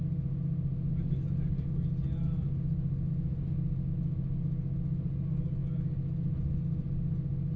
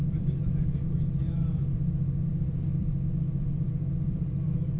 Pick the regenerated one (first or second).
second